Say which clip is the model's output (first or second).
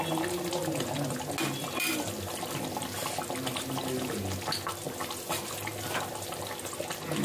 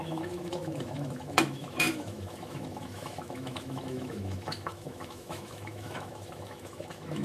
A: second